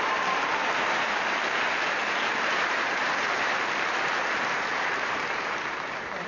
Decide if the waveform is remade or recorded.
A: remade